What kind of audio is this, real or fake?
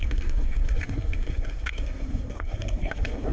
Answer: fake